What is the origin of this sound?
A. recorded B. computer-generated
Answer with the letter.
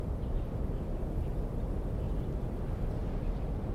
A